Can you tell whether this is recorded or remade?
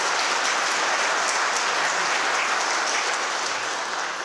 recorded